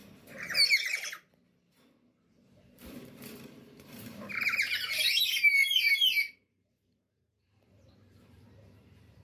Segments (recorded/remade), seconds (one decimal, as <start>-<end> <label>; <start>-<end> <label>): 0.0-2.5 recorded; 2.5-9.2 remade